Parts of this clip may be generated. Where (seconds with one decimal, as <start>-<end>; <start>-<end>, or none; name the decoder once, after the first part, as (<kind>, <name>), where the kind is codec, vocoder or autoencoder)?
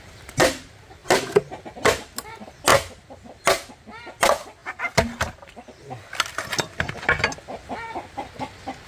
none